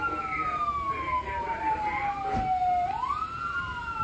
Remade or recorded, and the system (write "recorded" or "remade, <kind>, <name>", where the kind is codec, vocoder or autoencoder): recorded